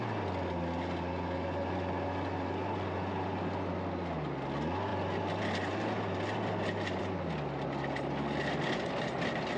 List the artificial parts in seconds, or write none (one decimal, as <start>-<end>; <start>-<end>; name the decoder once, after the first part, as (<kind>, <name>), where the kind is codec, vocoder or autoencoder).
none